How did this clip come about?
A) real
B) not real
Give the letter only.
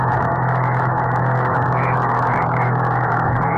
B